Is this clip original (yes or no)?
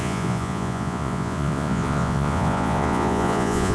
no